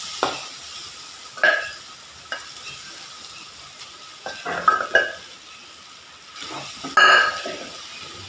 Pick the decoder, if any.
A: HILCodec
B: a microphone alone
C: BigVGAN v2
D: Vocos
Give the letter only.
B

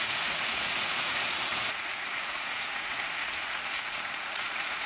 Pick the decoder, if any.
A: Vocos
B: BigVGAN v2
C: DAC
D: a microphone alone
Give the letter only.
A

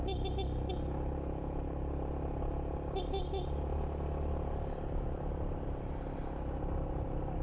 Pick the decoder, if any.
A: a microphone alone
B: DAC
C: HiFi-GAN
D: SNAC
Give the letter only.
A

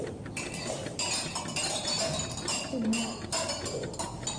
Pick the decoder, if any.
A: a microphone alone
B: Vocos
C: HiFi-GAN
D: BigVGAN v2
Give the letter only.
A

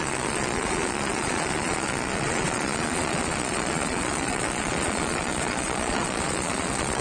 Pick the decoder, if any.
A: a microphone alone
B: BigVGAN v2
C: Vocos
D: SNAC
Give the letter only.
C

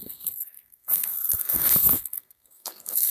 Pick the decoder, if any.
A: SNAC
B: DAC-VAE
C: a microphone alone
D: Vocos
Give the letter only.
A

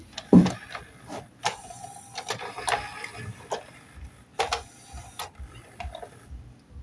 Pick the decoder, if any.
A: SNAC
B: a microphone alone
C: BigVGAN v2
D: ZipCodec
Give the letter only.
B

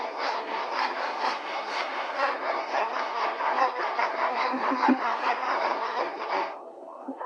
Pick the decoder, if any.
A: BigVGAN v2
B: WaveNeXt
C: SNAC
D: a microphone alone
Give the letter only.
C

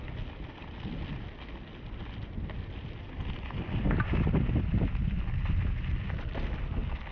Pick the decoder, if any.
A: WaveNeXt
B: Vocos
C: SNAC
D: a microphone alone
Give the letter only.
D